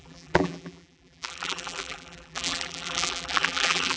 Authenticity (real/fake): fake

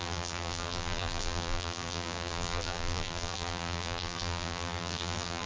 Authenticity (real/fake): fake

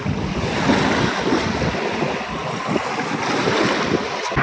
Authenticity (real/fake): real